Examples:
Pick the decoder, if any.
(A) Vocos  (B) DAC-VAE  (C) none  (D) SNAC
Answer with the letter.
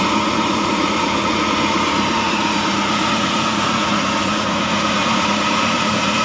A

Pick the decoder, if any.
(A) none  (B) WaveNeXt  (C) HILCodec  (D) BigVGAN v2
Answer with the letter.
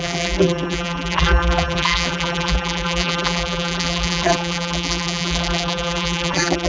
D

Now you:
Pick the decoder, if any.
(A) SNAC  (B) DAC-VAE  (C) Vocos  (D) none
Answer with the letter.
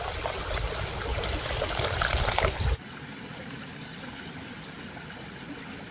D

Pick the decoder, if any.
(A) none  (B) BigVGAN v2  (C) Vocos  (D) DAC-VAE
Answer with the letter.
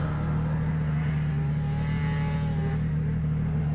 A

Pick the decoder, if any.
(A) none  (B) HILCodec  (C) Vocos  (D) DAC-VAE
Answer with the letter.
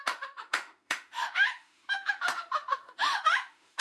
D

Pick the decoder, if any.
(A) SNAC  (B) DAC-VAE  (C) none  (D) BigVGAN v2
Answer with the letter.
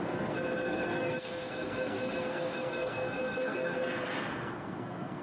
A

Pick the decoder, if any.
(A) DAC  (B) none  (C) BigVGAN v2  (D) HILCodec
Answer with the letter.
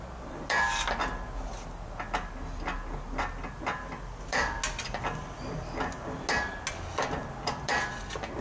B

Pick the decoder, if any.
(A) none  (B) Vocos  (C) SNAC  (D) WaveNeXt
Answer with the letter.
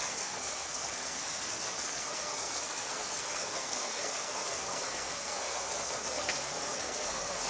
C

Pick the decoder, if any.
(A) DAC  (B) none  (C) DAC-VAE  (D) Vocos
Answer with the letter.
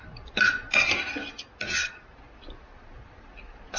B